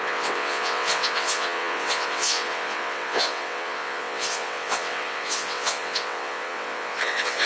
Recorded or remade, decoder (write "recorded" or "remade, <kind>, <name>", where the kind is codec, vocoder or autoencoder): remade, vocoder, WaveNeXt